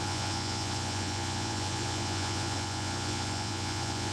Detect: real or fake fake